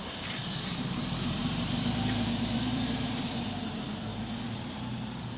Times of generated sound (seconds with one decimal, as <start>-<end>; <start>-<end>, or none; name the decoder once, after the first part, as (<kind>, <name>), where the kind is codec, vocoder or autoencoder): 0.0-4.1 (vocoder, BigVGAN v2); 4.6-5.4